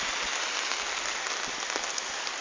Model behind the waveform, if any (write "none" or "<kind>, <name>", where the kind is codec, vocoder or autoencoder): none